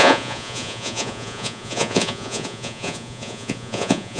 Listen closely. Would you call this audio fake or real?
fake